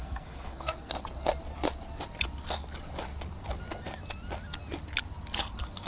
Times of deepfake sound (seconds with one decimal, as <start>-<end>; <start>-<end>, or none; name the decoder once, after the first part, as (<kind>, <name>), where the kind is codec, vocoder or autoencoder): 0.0-0.9 (codec, SNAC)